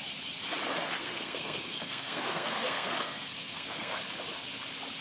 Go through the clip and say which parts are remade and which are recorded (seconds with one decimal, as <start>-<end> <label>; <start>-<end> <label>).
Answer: 0.0-1.0 recorded; 1.0-4.0 remade; 4.0-5.0 recorded